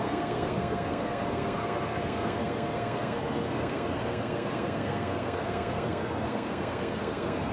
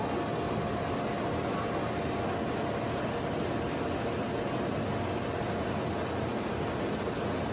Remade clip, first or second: first